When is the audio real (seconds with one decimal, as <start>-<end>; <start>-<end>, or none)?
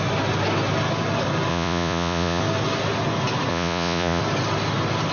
0.0-1.5; 2.4-3.5; 4.2-5.1